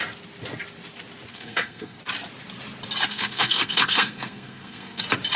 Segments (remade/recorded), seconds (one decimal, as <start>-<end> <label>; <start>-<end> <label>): 0.0-1.3 recorded; 1.3-2.0 remade; 2.0-3.1 recorded; 3.1-5.0 remade; 5.0-5.4 recorded